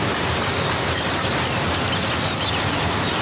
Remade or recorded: recorded